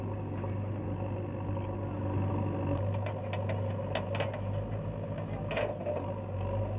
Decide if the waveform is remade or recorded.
recorded